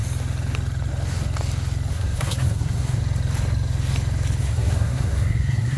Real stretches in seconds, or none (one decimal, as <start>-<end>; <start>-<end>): 0.0-1.9; 3.0-4.4